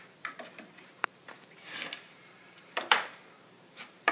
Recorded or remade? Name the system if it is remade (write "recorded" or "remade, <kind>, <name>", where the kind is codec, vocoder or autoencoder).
remade, vocoder, BigVGAN v2